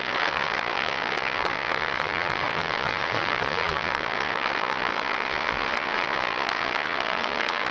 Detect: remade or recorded remade